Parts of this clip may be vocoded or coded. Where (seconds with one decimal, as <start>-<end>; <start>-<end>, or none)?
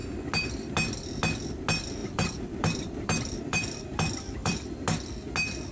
2.0-4.7